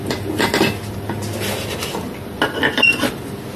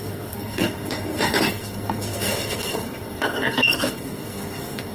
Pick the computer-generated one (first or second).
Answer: second